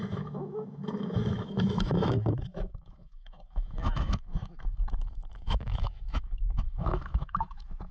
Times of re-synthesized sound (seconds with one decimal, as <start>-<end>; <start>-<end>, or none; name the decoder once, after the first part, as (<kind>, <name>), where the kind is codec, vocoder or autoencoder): 0.0-7.9 (autoencoder, DAC-VAE)